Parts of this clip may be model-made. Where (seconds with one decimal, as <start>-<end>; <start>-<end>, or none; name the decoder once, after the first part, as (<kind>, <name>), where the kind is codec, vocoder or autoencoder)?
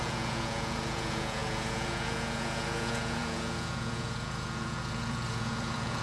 0.0-6.0 (vocoder, Vocos)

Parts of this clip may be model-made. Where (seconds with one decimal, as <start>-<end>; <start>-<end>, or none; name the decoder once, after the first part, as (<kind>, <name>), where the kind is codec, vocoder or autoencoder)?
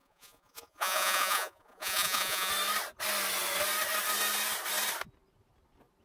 0.0-2.5 (vocoder, Vocos)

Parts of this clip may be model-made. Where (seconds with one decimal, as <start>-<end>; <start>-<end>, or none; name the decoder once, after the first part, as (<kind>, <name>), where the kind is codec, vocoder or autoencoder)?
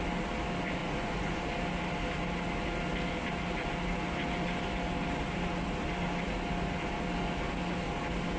0.8-1.4 (vocoder, Vocos)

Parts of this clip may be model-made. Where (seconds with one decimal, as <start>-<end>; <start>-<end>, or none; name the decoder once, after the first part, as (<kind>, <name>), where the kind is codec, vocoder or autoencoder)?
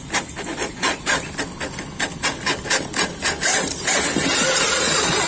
0.5-1.2 (vocoder, Vocos)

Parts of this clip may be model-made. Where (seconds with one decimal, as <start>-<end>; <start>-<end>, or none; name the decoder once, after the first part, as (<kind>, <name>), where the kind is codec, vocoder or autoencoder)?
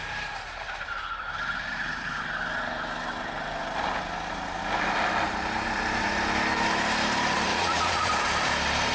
7.5-8.1 (vocoder, Vocos)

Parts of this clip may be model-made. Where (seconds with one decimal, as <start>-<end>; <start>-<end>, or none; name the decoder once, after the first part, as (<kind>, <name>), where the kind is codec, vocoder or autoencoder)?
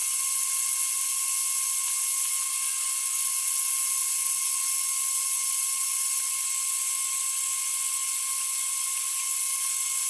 none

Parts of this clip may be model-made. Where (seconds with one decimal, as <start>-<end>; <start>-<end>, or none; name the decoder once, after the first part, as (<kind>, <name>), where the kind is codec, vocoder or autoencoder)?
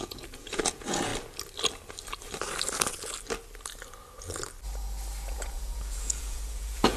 0.0-1.1 (vocoder, Vocos); 5.3-7.0